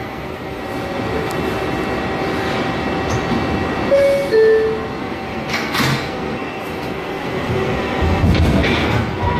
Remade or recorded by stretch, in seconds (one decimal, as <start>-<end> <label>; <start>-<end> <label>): 0.0-0.6 remade; 0.6-5.0 recorded; 5.0-9.4 remade